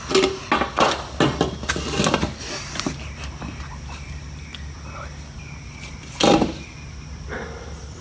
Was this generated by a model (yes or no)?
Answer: no